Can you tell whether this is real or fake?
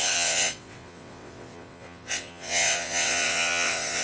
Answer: fake